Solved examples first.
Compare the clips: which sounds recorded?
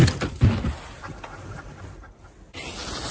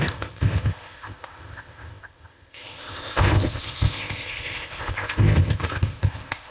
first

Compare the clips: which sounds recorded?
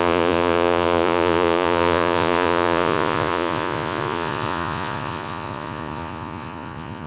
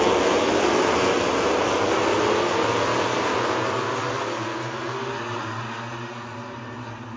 second